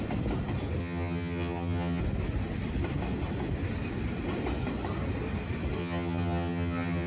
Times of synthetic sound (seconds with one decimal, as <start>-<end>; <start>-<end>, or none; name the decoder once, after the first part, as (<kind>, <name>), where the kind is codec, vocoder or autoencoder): 0.8-2.0 (vocoder, HiFi-GAN); 5.8-7.1